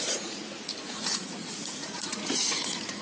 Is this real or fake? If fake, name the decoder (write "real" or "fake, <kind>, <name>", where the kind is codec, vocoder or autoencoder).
fake, vocoder, Vocos